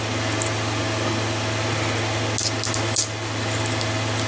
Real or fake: real